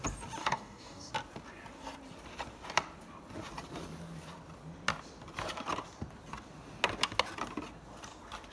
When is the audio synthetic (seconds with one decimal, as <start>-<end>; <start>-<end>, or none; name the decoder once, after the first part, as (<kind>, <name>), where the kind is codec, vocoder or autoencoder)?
0.4-1.1 (codec, DAC)